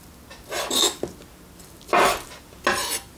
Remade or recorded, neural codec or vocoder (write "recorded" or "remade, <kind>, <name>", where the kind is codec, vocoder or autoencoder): recorded